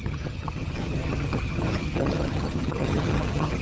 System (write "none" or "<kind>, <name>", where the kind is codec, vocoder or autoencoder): vocoder, HiFi-GAN